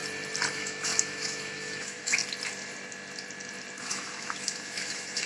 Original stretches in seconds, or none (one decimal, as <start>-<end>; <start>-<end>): 0.0-0.5; 2.2-3.8